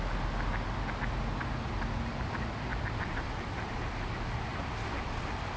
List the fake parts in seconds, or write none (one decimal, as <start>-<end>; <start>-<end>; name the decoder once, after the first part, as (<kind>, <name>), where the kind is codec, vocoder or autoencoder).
none